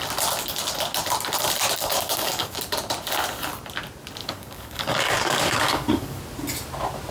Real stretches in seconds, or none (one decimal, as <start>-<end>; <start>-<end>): 0.0-1.8; 2.6-4.2; 6.2-7.1